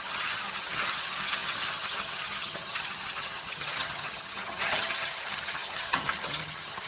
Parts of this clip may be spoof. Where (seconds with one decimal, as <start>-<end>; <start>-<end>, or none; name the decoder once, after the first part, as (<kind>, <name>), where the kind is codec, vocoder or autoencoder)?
0.0-6.9 (vocoder, HiFi-GAN)